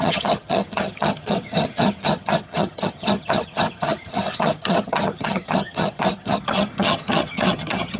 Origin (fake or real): fake